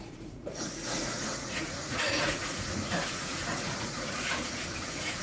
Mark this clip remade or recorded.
remade